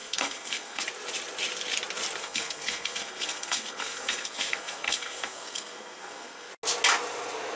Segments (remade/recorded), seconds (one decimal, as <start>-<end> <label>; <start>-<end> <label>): 0.0-0.8 remade; 0.8-2.2 recorded; 2.2-6.5 remade; 6.5-7.6 recorded